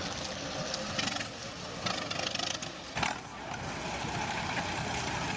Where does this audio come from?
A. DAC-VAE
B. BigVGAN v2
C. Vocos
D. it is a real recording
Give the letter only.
D